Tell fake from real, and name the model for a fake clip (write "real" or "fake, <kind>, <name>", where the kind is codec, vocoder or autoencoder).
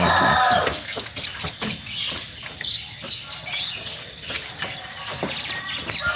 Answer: real